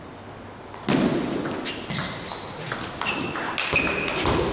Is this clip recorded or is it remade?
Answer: recorded